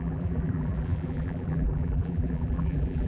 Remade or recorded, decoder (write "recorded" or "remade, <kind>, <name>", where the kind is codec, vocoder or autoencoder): remade, vocoder, BigVGAN v2